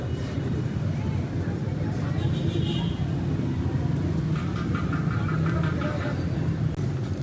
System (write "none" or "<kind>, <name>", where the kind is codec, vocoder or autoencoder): none